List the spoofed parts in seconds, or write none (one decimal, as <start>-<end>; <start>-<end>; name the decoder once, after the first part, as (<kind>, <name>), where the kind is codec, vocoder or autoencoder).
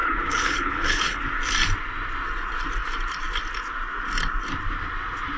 0.0-1.2 (codec, HILCodec)